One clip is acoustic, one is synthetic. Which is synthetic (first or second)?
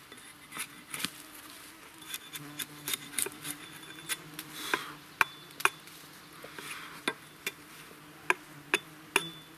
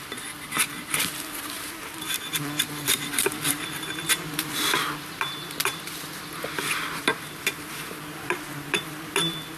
second